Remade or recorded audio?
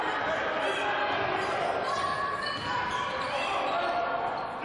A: recorded